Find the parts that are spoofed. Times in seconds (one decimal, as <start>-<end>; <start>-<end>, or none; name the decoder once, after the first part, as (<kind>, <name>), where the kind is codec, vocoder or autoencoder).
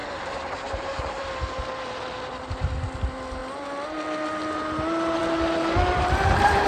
0.0-1.2 (vocoder, BigVGAN v2)